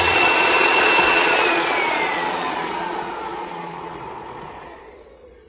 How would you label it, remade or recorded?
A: remade